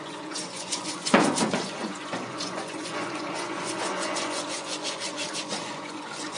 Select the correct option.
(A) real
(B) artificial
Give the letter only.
B